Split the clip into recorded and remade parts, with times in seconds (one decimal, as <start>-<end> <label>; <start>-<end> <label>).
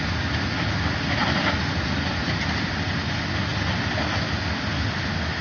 0.0-5.4 recorded